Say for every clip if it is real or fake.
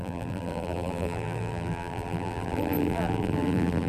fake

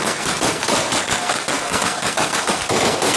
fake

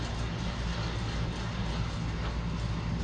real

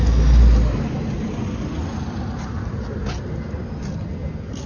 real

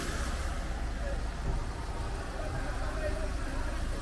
real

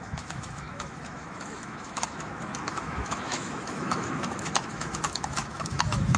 fake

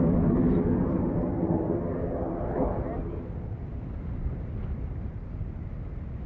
real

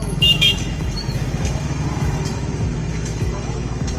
fake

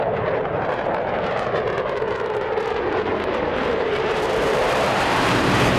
fake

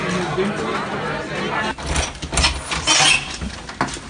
real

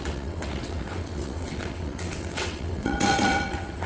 fake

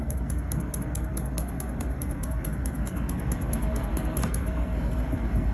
fake